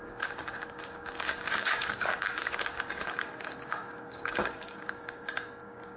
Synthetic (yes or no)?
yes